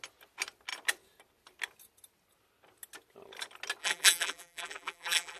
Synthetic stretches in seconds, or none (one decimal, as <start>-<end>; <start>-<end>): 3.8-5.4